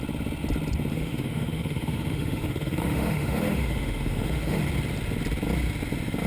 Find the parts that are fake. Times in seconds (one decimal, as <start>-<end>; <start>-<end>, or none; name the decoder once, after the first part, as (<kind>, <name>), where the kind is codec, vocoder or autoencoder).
0.9-4.6 (autoencoder, DAC-VAE)